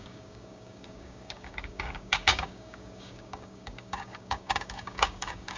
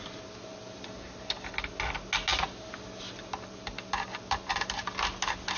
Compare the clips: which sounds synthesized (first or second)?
first